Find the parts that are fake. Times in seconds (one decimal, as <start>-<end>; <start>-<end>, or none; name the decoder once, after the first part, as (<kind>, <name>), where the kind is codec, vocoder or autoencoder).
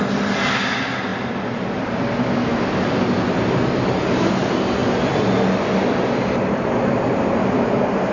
1.1-1.8 (vocoder, BigVGAN v2)